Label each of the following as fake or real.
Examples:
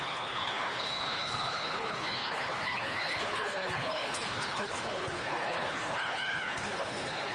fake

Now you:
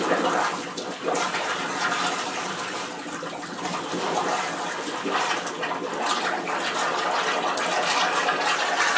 real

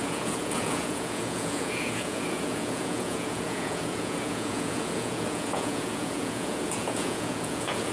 fake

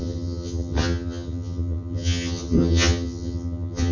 fake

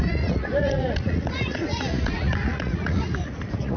fake